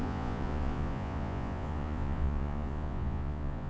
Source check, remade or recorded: remade